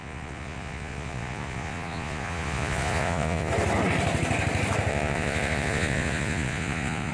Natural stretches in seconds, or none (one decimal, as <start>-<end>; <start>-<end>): 3.5-4.9